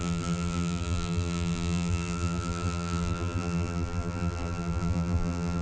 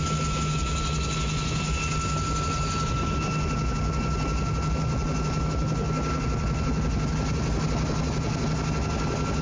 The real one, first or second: second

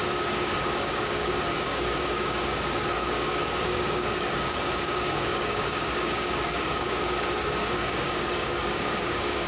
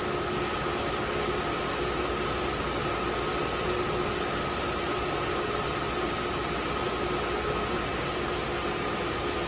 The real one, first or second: second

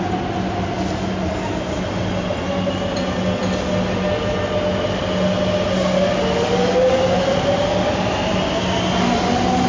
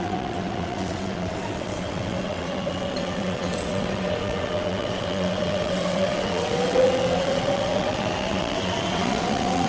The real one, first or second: first